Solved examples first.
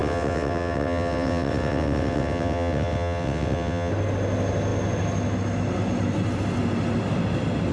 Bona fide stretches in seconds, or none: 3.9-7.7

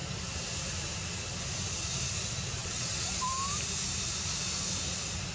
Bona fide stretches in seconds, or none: 0.0-2.6; 3.2-5.3